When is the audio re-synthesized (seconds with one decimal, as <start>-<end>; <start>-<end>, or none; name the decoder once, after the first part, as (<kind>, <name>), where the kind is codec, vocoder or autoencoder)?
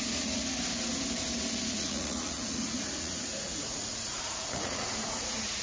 0.0-0.4 (vocoder, Vocos); 1.5-5.6